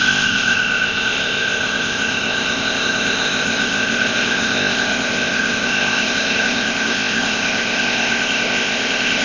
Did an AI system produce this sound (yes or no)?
yes